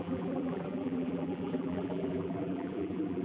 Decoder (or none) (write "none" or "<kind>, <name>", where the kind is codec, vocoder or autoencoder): vocoder, BigVGAN v2